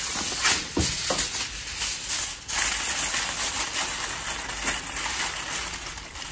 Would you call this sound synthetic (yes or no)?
no